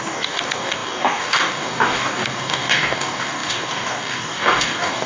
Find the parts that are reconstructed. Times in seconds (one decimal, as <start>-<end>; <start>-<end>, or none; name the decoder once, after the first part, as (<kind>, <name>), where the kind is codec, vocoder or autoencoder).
0.0-5.1 (codec, DAC)